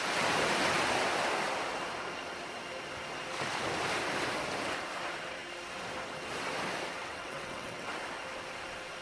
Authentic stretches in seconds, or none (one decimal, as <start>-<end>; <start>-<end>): 0.0-7.0; 7.9-9.0